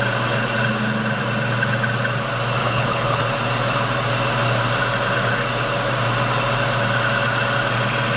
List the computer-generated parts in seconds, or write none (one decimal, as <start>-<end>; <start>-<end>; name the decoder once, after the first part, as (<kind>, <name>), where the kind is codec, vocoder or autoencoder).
2.6-3.2 (codec, HILCodec)

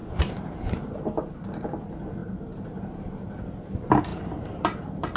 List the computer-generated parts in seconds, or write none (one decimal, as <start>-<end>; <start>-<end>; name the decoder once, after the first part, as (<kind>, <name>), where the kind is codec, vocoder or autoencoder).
0.0-0.9 (vocoder, BigVGAN v2); 2.2-3.4; 4.1-5.2

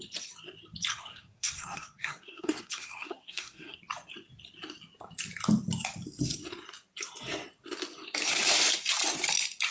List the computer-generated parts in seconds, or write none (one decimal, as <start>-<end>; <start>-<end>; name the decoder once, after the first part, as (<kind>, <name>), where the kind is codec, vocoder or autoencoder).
0.9-3.8 (codec, SNAC)

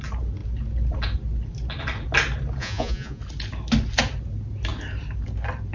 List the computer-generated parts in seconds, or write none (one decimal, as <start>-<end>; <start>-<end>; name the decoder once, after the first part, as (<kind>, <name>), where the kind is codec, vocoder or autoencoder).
2.6-3.2 (vocoder, Vocos)

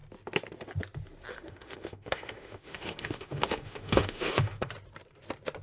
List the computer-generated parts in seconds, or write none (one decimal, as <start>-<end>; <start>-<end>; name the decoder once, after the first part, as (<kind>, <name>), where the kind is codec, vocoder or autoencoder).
1.3-4.7 (autoencoder, DAC-VAE)

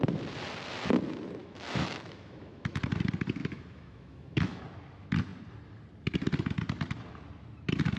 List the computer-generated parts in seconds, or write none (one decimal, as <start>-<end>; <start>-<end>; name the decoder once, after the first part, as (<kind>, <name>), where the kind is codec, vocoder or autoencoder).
1.4-2.8 (autoencoder, DAC-VAE); 3.4-4.6

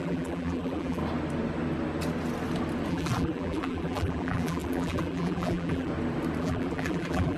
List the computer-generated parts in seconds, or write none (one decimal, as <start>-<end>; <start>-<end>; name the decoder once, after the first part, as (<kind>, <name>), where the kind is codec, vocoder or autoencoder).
0.0-1.0 (vocoder, BigVGAN v2); 2.9-5.9; 6.4-7.4

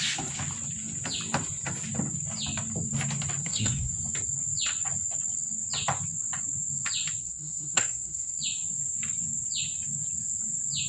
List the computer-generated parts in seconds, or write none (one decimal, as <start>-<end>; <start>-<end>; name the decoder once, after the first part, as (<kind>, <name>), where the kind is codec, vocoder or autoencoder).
3.4-3.9 (codec, SNAC); 7.2-8.4